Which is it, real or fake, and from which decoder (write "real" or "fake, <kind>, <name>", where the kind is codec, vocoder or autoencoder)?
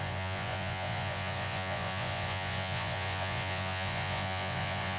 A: fake, vocoder, Vocos